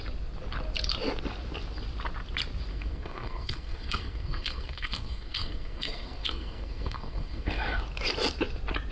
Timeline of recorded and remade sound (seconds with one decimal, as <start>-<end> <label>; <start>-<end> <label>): 0.0-2.7 recorded; 2.7-7.8 remade; 7.8-8.9 recorded